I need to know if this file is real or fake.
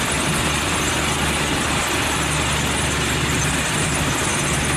real